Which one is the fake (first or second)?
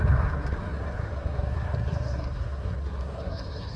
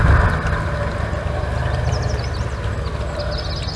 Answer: first